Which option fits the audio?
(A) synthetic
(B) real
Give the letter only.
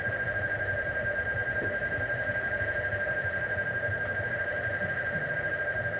A